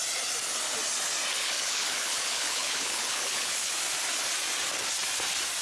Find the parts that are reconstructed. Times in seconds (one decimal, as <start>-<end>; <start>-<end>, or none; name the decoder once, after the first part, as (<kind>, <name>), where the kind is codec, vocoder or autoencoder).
1.3-3.7 (codec, HILCodec)